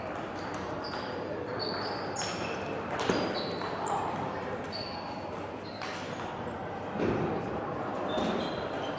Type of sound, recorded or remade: remade